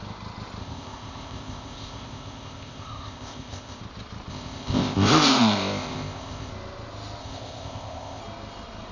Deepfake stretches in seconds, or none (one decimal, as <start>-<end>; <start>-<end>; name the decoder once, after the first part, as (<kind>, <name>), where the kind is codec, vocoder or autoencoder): 0.6-3.8 (codec, ZipCodec); 4.3-6.5; 7.2-8.2